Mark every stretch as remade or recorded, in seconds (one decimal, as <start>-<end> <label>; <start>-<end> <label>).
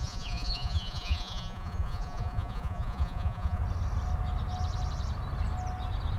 0.0-3.6 remade; 3.6-6.2 recorded